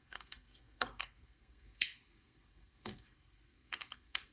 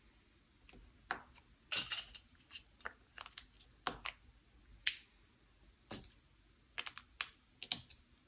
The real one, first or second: second